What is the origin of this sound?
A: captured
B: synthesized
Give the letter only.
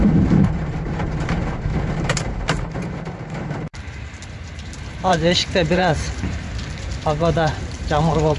B